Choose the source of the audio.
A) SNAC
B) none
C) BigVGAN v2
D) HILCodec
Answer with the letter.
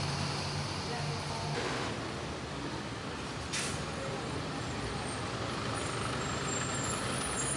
B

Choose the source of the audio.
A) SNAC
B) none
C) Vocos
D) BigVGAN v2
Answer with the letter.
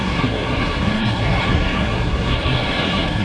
A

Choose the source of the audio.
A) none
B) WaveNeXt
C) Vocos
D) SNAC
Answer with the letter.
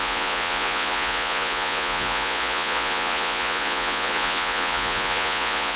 C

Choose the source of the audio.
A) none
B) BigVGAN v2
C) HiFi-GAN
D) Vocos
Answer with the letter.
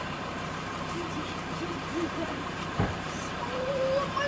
B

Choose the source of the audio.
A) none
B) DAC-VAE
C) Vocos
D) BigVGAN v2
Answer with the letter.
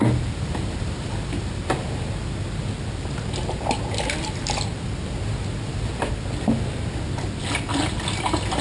A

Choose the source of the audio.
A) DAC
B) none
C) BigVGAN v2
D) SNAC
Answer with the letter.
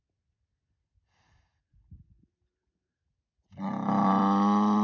B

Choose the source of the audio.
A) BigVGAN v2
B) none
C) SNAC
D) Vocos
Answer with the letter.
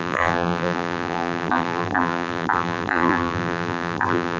A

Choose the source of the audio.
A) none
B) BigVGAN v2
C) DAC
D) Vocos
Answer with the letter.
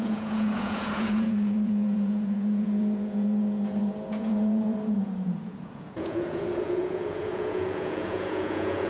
D